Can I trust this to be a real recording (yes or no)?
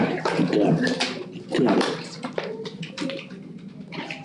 yes